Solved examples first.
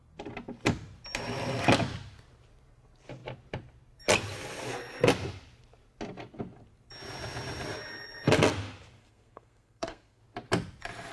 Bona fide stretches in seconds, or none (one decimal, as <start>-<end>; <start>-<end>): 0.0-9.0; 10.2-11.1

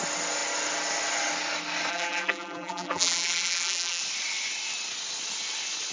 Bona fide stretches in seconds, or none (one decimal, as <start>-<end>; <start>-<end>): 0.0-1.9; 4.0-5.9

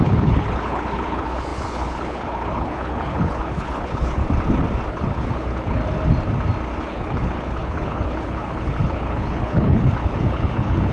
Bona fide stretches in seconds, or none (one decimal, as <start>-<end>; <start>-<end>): 4.2-4.9; 5.8-6.8

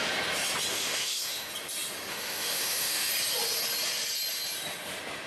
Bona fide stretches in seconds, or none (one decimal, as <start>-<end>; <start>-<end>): 0.0-0.7; 1.5-2.1; 3.1-5.3

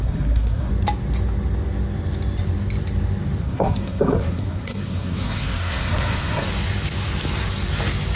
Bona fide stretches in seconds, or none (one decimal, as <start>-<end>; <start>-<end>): 0.7-3.4; 6.5-8.2

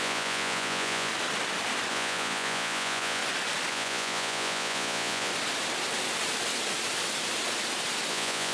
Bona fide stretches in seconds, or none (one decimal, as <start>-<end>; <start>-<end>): 1.1-1.9; 3.2-3.7; 5.3-8.1